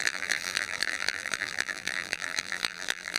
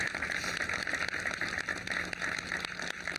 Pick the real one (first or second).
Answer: second